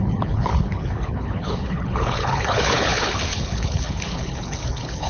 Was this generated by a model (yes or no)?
yes